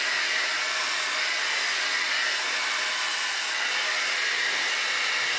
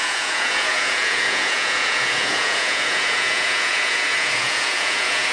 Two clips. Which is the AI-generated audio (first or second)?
second